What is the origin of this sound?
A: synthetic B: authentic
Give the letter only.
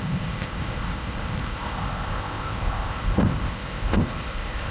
A